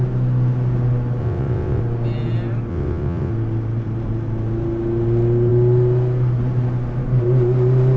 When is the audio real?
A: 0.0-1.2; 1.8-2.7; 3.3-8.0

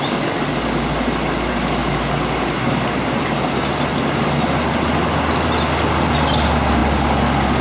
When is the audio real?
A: 0.0-7.6

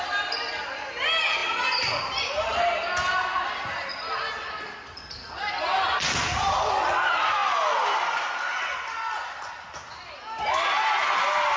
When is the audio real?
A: 0.0-11.6

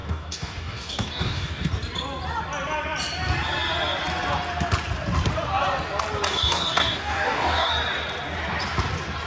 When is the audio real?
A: 1.7-6.3; 7.7-9.3

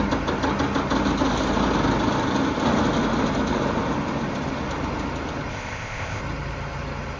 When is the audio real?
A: 0.0-5.5; 6.2-7.2

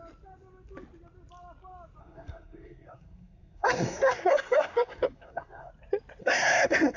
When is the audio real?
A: 0.0-2.0; 5.7-6.2

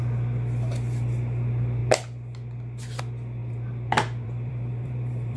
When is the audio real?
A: 0.0-3.4